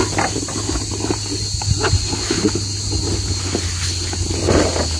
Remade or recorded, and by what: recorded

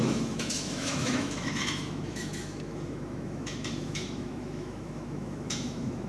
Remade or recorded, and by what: remade, autoencoder, DAC-VAE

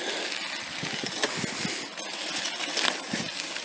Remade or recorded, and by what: recorded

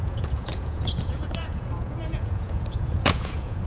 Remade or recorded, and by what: remade, vocoder, Vocos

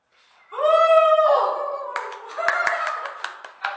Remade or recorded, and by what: recorded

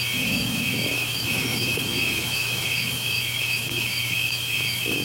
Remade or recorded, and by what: remade, autoencoder, DAC-VAE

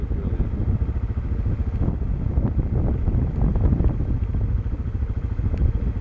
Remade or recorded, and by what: recorded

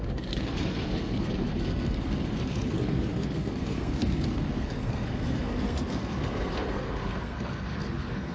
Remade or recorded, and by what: remade, codec, SNAC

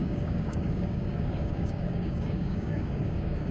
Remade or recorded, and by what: remade, codec, DAC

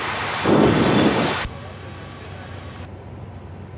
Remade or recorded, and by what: recorded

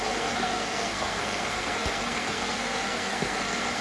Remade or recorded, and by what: remade, codec, SNAC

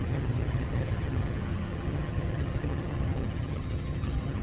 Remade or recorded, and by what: remade, vocoder, HiFi-GAN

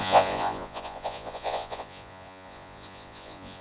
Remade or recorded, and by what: remade, vocoder, Vocos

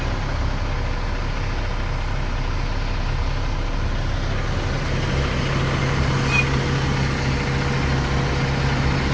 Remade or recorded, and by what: recorded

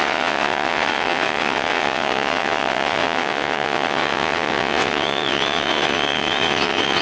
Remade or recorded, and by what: remade, vocoder, WaveNeXt